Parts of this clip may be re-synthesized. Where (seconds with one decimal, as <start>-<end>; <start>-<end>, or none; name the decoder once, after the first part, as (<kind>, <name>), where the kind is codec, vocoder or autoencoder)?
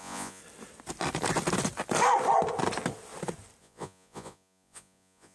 0.0-0.4 (vocoder, Vocos); 3.6-5.3